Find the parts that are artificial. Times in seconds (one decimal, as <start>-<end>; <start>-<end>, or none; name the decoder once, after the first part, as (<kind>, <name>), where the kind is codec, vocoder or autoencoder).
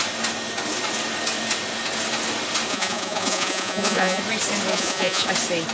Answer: 2.7-4.2 (vocoder, Vocos); 4.7-5.3